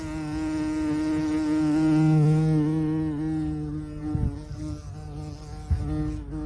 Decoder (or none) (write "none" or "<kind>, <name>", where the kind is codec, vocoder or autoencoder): none